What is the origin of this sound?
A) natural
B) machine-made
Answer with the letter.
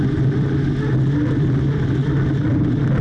A